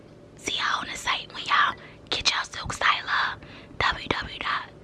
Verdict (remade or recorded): recorded